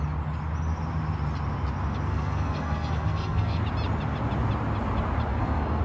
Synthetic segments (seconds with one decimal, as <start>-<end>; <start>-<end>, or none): 2.1-3.6; 5.3-5.8